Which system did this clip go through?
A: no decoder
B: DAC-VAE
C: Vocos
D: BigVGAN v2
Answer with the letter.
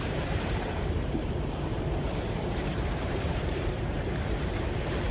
D